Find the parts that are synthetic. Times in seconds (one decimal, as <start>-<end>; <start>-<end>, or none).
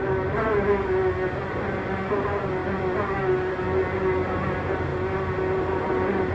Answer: none